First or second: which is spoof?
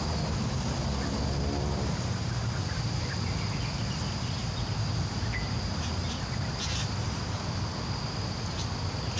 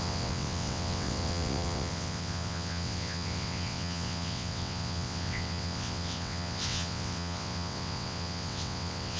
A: second